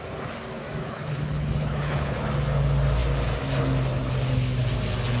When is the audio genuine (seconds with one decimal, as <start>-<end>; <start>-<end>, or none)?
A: 0.0-0.8; 2.2-5.2